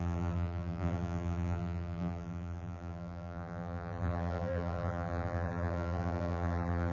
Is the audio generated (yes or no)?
yes